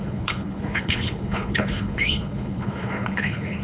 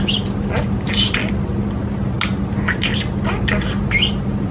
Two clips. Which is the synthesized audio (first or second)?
first